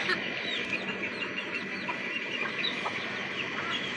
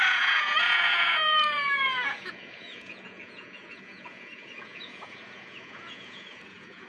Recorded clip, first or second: first